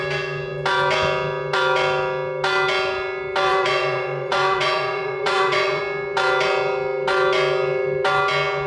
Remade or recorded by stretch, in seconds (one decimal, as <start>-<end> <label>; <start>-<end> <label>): 0.0-3.5 recorded; 3.5-5.8 remade; 5.8-8.7 recorded